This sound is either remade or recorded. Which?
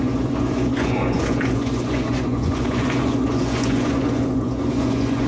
remade